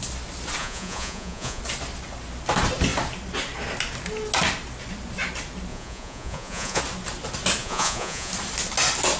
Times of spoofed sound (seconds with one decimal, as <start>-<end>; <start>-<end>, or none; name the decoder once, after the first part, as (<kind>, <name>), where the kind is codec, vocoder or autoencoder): 0.6-1.6 (vocoder, Vocos); 5.7-6.8; 7.6-8.3